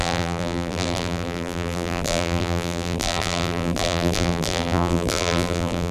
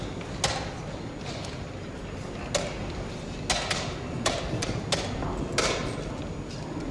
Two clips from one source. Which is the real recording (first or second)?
second